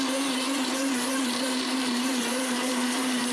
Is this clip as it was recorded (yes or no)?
no